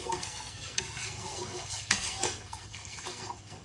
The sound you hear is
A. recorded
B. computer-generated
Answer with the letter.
B